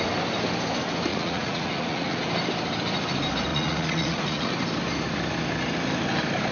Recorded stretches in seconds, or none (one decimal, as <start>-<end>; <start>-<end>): 0.0-1.1; 2.2-3.5; 4.5-6.5